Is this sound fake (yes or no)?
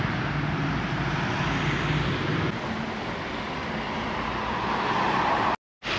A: no